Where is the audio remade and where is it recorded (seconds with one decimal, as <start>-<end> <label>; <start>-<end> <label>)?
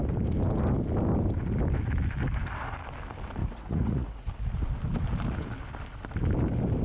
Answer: 0.0-3.4 recorded; 3.4-4.3 remade; 4.3-6.8 recorded